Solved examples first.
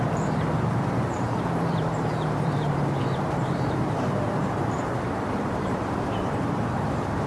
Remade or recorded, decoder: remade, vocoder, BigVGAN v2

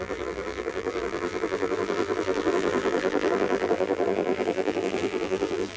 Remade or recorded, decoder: remade, vocoder, BigVGAN v2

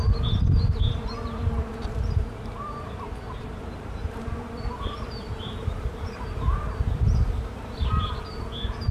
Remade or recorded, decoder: remade, vocoder, BigVGAN v2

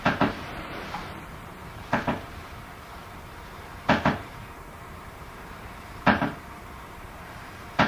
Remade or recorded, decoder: remade, vocoder, BigVGAN v2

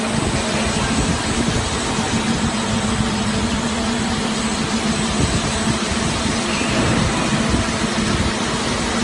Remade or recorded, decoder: recorded